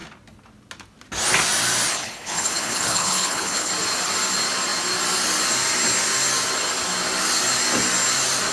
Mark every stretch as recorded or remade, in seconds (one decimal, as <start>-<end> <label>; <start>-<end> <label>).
0.0-1.9 recorded; 1.9-3.7 remade; 3.7-8.5 recorded